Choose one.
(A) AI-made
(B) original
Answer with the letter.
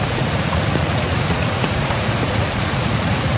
A